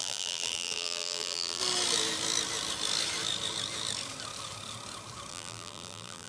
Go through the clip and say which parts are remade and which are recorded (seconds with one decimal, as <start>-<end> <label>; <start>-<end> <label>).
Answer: 0.0-1.6 remade; 1.6-5.3 recorded; 5.3-6.3 remade